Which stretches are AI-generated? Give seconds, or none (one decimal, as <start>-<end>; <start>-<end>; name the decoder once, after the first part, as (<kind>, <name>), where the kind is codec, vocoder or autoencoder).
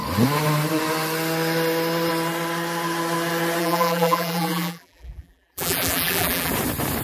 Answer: 3.6-6.5 (vocoder, BigVGAN v2)